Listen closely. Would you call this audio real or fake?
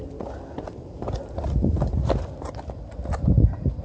real